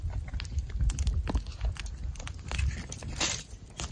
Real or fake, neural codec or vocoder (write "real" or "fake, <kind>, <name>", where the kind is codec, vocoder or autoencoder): real